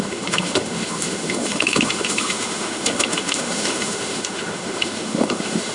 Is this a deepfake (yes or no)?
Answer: yes